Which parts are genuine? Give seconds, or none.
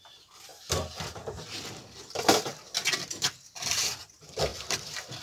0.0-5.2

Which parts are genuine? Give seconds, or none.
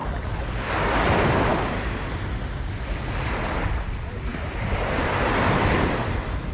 0.0-6.5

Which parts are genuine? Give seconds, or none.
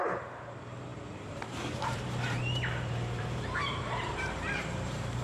none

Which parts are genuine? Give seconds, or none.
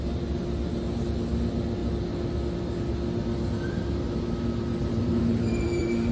0.0-4.9